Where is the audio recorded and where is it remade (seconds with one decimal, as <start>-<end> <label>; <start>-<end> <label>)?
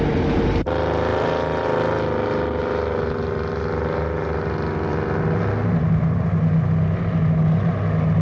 0.0-8.2 recorded